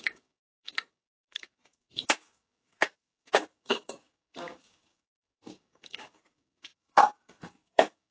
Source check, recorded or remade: remade